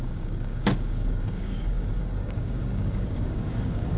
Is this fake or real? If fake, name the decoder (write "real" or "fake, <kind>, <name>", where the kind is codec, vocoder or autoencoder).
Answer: fake, codec, DAC